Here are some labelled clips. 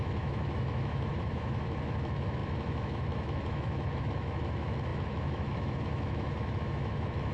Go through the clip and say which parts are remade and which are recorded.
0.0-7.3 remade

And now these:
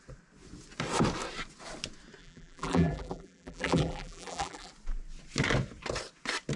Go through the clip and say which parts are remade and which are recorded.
0.0-2.2 recorded; 2.2-4.7 remade; 4.7-6.6 recorded

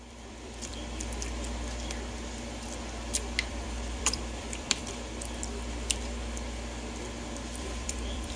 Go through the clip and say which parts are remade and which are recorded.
0.0-0.7 remade; 0.7-3.5 recorded; 3.5-4.8 remade; 4.8-7.6 recorded; 7.6-8.4 remade

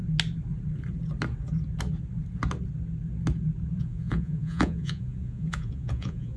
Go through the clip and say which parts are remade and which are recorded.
0.0-3.8 recorded; 3.8-6.4 remade

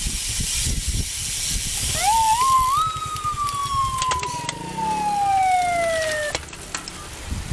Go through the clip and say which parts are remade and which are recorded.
0.0-7.5 recorded